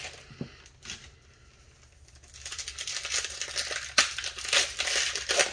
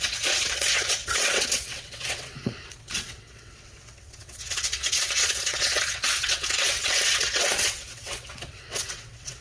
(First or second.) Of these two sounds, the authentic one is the first